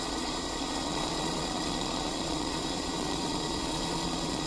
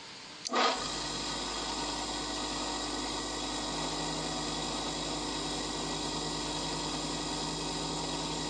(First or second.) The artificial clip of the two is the first